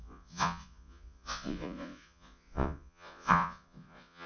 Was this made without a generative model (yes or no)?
no